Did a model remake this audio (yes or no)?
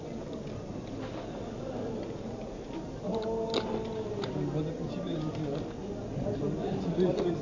no